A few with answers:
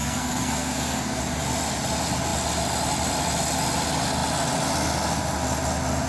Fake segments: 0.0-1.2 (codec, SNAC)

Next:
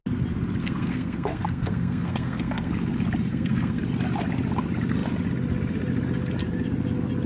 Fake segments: 0.6-2.7 (codec, SNAC); 3.3-3.8

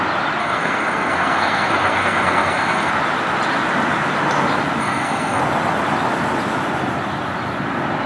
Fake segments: 0.4-2.9 (codec, SNAC); 4.8-5.4

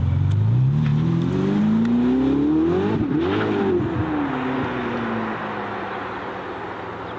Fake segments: none

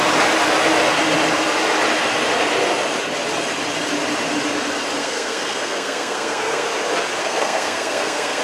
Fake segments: 5.0-6.7 (codec, SNAC); 7.2-8.4

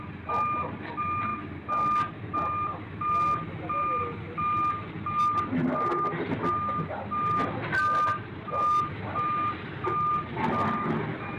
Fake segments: none